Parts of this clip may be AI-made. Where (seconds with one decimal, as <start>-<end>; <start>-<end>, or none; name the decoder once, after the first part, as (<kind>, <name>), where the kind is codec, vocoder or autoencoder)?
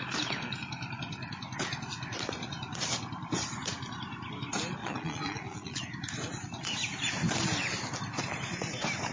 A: 4.8-5.8 (vocoder, Vocos)